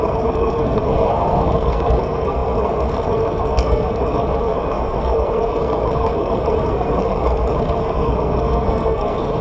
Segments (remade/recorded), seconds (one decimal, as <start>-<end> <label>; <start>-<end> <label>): 0.0-9.4 remade